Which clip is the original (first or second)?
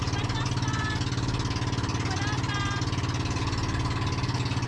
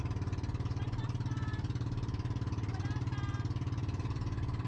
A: first